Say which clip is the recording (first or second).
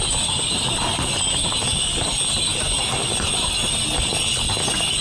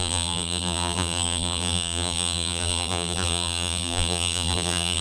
first